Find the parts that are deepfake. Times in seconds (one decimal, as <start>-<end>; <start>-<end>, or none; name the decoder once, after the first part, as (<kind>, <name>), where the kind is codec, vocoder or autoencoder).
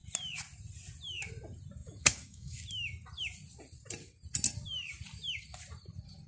1.8-2.6 (autoencoder, DAC-VAE)